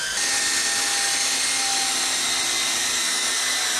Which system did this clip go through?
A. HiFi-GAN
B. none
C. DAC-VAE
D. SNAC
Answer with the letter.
B